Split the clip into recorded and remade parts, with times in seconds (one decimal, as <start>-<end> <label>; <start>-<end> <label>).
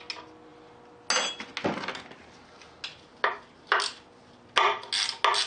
0.0-5.5 recorded